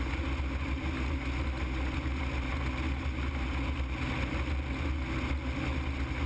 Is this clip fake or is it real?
real